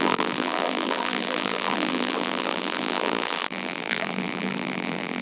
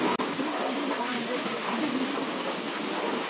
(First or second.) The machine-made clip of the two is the first